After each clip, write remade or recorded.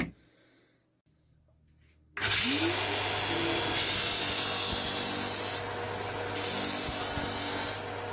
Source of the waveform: recorded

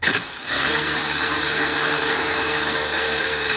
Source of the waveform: remade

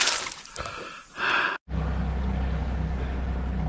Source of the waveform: recorded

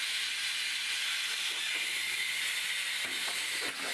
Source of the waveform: recorded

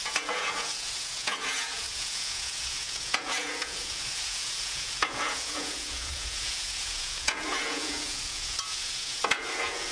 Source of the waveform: remade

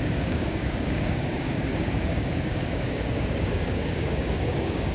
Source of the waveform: remade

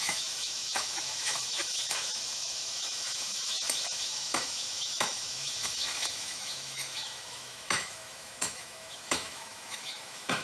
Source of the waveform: remade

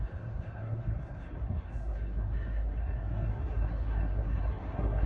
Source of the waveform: remade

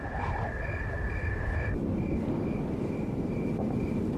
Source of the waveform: recorded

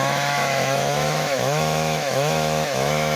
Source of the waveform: remade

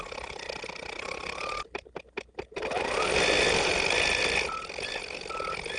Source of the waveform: recorded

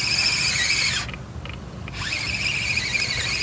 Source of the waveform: recorded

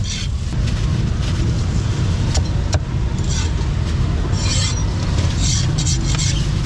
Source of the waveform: recorded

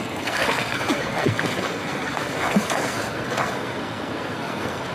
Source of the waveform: remade